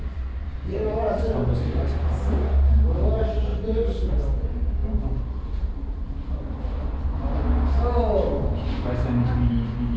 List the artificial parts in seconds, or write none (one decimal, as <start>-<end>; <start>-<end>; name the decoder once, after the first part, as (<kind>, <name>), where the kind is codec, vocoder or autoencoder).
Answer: none